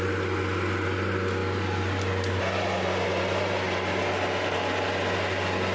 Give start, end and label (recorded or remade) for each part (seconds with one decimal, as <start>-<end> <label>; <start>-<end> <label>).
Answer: 0.0-5.7 recorded